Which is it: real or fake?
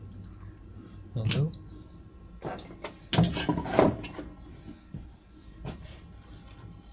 real